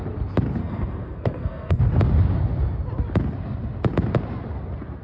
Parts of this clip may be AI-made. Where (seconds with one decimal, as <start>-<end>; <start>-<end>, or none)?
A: 0.6-1.8